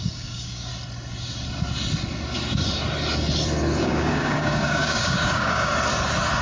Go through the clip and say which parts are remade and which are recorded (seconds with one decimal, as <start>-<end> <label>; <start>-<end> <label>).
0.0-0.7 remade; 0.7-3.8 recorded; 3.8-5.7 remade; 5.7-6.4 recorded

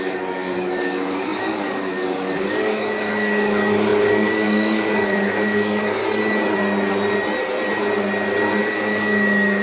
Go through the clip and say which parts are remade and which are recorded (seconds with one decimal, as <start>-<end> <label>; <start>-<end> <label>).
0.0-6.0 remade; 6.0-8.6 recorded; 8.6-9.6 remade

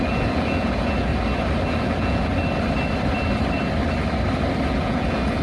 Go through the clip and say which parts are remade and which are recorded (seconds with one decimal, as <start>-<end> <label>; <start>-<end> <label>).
0.0-1.1 remade; 1.1-1.7 recorded; 1.7-2.3 remade; 2.3-4.7 recorded; 4.7-5.4 remade

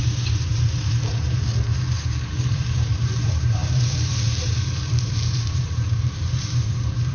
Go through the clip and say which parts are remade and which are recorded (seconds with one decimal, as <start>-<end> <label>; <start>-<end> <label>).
0.0-7.1 remade

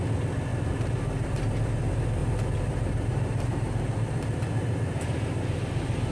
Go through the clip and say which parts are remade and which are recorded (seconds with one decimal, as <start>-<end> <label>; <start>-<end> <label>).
0.0-0.5 recorded; 0.5-1.8 remade; 1.8-2.2 recorded; 2.2-6.1 remade